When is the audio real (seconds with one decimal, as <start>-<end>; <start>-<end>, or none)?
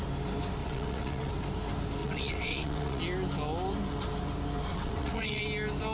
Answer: 0.0-0.6; 1.3-2.0; 3.0-4.7; 5.4-5.9